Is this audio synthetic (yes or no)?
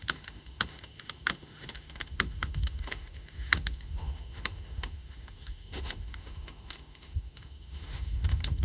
yes